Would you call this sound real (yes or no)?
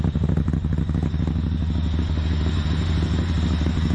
yes